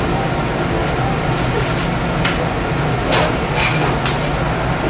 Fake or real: real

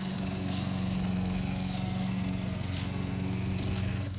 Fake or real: fake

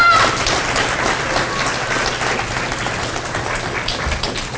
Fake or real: real